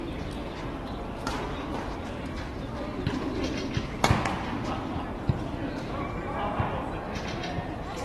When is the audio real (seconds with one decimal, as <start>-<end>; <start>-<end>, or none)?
0.0-8.0